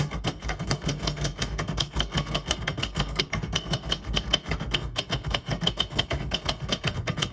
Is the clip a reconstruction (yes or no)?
yes